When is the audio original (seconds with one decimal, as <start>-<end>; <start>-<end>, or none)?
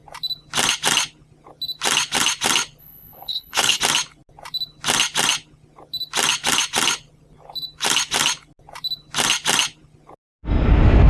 0.0-2.8; 3.8-11.1